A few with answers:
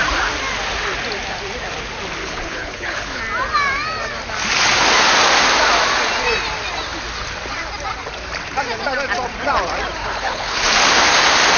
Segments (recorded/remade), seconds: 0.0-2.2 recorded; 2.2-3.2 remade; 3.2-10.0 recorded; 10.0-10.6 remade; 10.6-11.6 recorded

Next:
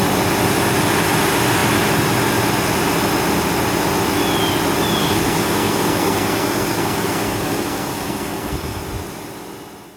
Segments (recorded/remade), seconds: 0.0-5.0 recorded; 5.0-8.8 remade; 8.8-10.0 recorded

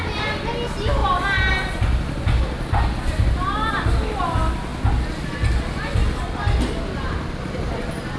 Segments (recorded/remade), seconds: 0.0-8.2 recorded

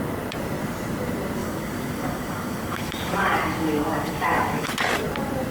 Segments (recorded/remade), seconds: 0.0-1.4 recorded; 1.4-4.7 remade; 4.7-5.5 recorded

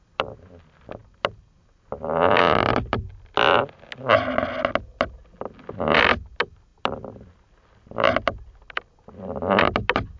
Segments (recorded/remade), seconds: 0.0-10.2 recorded

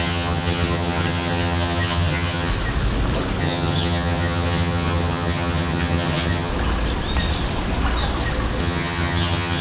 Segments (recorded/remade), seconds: 0.0-2.5 remade; 2.5-3.4 recorded; 3.4-6.5 remade; 6.5-8.6 recorded; 8.6-9.6 remade

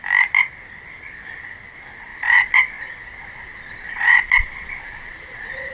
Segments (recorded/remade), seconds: 0.0-2.1 recorded; 2.1-5.7 remade

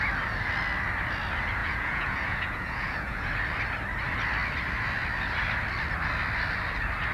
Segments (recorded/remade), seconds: 0.0-1.6 recorded; 1.6-3.3 remade; 3.3-7.1 recorded